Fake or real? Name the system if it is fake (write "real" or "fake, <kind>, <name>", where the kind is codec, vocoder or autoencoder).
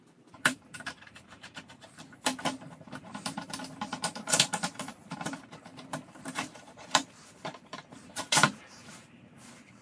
fake, vocoder, BigVGAN v2